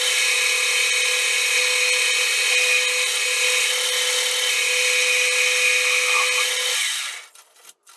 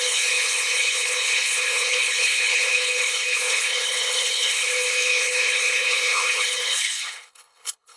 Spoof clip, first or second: second